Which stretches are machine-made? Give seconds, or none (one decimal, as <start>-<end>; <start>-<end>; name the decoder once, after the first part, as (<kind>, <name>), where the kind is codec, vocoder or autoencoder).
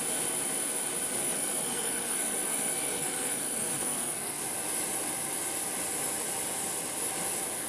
1.2-4.4 (codec, SNAC)